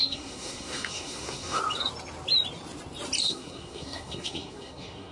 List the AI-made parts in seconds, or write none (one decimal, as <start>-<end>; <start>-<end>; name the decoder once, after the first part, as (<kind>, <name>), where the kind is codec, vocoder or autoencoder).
0.0-1.6 (codec, SNAC); 3.2-5.1